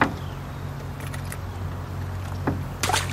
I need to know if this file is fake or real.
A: real